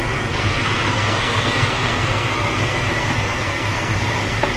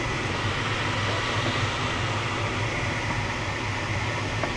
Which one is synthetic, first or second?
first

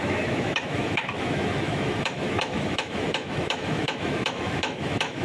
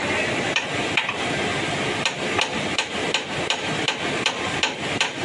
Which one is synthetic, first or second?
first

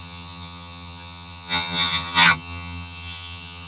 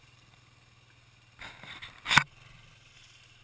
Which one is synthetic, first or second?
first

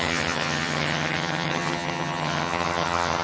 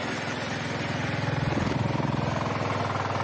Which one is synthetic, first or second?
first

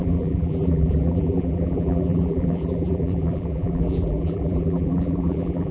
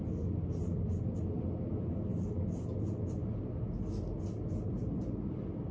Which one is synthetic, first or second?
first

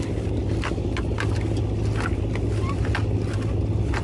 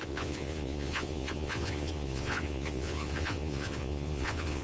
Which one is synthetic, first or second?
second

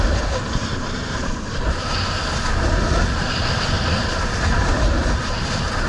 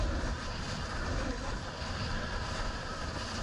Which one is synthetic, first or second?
second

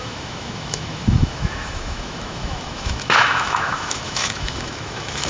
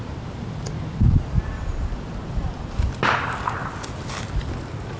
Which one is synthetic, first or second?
first